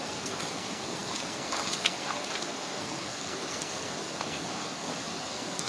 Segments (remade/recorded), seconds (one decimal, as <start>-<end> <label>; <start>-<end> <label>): 0.0-5.7 remade